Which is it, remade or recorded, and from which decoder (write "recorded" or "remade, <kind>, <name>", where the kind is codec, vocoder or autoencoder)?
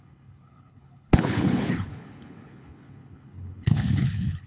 remade, codec, HILCodec